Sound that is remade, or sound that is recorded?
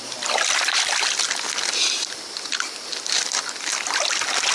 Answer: recorded